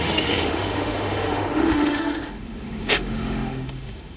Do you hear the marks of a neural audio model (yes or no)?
yes